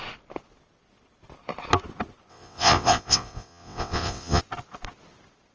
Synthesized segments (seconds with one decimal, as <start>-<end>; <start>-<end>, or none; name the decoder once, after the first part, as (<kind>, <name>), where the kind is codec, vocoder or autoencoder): 2.3-4.4 (vocoder, WaveNeXt)